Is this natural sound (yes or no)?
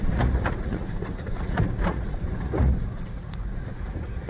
no